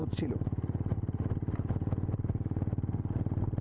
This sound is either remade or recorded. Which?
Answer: recorded